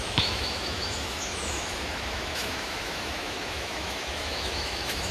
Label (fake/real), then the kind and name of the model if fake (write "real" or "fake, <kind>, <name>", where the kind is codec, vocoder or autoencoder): fake, autoencoder, DAC-VAE